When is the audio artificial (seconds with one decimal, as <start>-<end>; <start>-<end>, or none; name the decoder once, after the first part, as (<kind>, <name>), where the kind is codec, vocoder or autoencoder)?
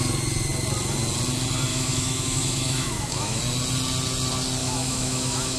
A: 1.7-3.4 (autoencoder, DAC-VAE); 4.6-5.6